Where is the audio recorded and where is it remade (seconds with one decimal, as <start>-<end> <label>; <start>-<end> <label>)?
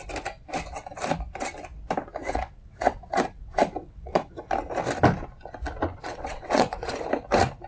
0.0-2.2 recorded; 2.2-4.5 remade; 4.5-5.9 recorded; 5.9-6.9 remade; 6.9-7.7 recorded